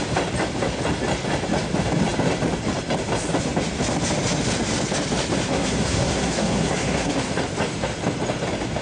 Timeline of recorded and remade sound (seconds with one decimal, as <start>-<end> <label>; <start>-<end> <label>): 0.0-5.5 recorded; 5.5-7.3 remade; 7.3-8.8 recorded